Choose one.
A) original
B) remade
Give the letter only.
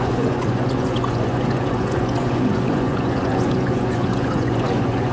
B